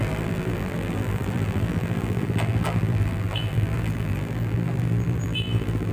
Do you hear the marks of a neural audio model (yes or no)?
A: yes